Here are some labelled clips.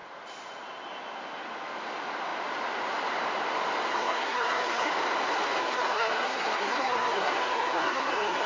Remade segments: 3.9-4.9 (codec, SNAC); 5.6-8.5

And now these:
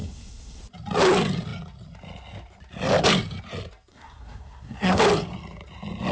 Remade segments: 0.0-0.6 (codec, SNAC); 3.9-5.0

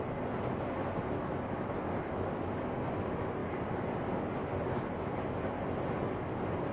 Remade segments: none

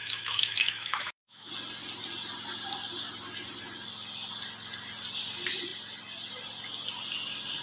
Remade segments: 0.0-1.5 (autoencoder, DAC-VAE)

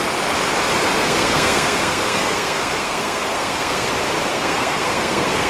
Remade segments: 0.8-3.9 (codec, SNAC); 4.3-5.5

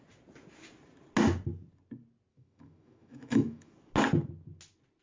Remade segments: 2.3-3.7 (autoencoder, DAC-VAE)

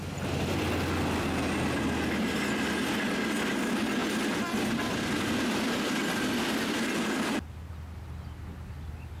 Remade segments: none

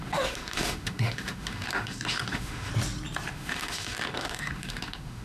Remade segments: 0.0-2.7 (autoencoder, DAC-VAE); 3.3-5.2